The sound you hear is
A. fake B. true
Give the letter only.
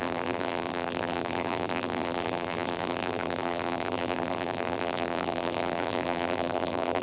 A